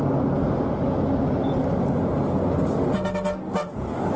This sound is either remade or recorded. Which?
recorded